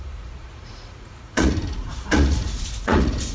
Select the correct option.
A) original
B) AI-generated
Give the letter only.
B